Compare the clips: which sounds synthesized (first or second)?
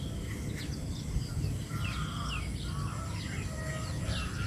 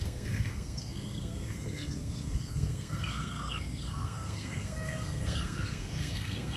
second